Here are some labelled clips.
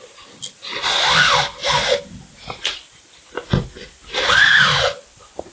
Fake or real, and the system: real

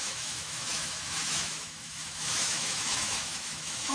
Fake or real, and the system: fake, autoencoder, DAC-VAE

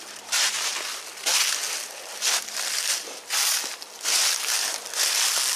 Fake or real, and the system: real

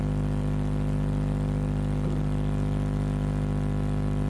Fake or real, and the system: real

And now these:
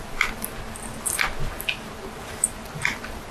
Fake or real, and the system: real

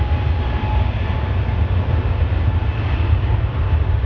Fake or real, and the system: real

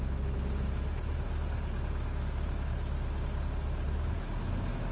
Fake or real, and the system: real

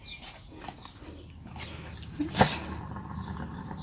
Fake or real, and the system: real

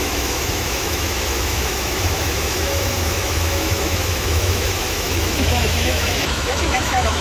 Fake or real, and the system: fake, autoencoder, DAC-VAE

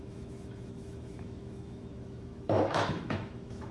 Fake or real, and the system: fake, autoencoder, DAC-VAE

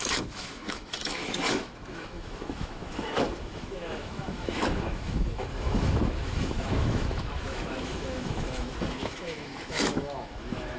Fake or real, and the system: fake, autoencoder, DAC-VAE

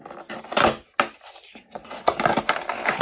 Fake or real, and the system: real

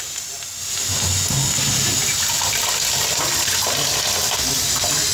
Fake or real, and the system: real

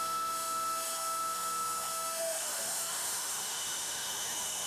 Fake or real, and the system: fake, autoencoder, DAC-VAE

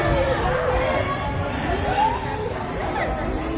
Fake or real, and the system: real